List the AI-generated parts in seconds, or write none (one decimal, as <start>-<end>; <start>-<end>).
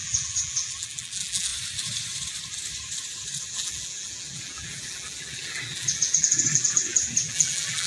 0.0-1.5; 3.5-7.9